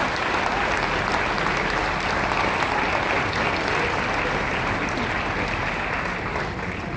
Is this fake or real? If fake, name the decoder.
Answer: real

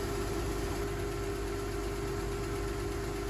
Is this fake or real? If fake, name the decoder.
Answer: real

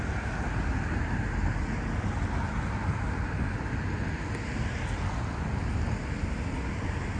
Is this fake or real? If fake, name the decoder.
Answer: real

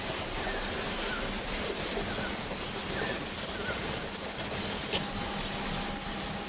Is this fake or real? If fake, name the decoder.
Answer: real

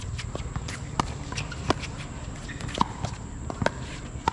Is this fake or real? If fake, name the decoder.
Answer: real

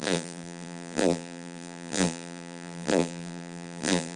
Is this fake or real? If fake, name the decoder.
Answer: fake, vocoder, BigVGAN v2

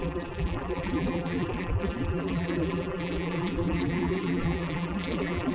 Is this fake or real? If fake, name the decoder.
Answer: fake, vocoder, BigVGAN v2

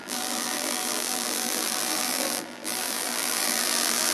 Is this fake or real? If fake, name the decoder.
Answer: fake, vocoder, BigVGAN v2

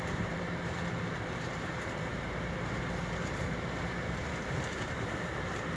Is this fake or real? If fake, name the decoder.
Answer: fake, vocoder, BigVGAN v2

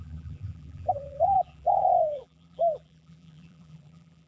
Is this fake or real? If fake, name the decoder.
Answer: fake, vocoder, BigVGAN v2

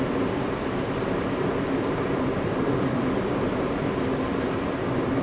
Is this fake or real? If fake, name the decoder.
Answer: fake, vocoder, BigVGAN v2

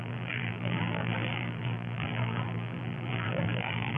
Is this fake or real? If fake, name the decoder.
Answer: fake, vocoder, BigVGAN v2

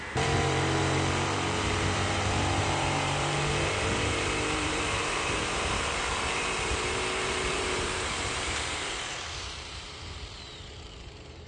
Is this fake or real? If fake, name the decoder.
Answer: fake, vocoder, BigVGAN v2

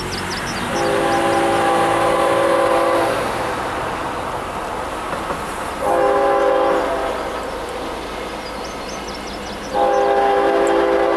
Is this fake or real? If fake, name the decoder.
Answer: real